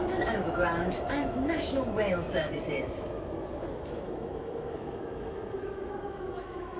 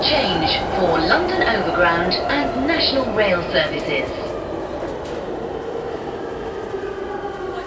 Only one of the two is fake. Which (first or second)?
first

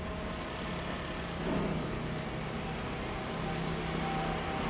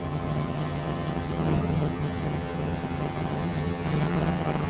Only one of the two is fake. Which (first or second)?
second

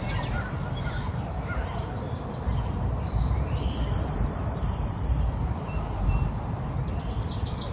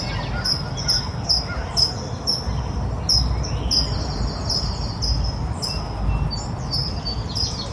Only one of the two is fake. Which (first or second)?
first